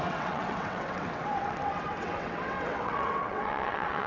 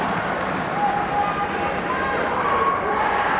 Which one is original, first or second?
second